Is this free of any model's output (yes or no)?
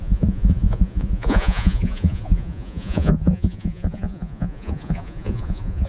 no